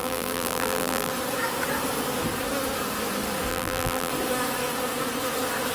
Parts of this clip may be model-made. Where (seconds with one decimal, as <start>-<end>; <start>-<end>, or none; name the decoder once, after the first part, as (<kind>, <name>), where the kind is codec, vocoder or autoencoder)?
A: 0.0-1.1 (vocoder, BigVGAN v2); 3.5-4.1

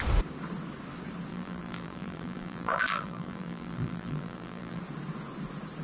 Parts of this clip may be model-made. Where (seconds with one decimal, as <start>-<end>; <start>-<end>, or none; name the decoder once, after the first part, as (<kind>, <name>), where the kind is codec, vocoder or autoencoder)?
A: 1.3-4.8 (vocoder, BigVGAN v2)

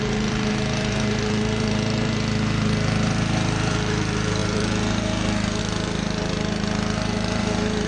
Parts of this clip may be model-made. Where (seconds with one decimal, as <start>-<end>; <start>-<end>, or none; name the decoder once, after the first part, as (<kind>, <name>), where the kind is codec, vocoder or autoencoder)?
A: 0.0-7.9 (vocoder, BigVGAN v2)

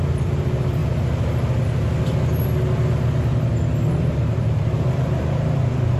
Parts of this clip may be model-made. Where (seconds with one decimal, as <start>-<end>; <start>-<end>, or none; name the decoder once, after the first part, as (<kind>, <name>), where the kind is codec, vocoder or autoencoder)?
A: 0.0-0.8 (vocoder, BigVGAN v2); 4.1-6.0

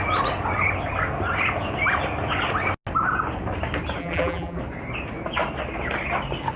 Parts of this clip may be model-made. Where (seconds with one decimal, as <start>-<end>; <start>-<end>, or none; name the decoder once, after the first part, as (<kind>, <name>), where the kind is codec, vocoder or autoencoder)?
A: 4.0-4.6 (vocoder, BigVGAN v2)

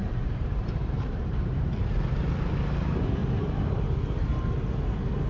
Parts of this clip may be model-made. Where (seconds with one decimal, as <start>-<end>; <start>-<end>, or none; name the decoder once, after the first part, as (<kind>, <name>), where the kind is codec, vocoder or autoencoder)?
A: 0.0-1.6 (vocoder, BigVGAN v2); 3.2-3.8

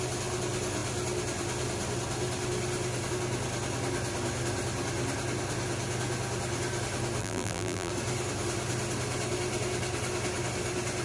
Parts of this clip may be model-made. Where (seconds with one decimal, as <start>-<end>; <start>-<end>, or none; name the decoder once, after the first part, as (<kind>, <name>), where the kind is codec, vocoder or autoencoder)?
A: 7.2-7.9 (vocoder, BigVGAN v2)

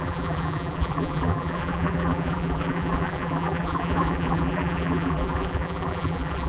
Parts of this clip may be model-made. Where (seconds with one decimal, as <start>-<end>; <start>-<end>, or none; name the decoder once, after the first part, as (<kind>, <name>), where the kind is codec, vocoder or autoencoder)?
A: 0.0-6.5 (vocoder, BigVGAN v2)